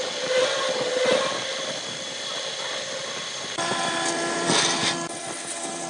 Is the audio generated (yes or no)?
yes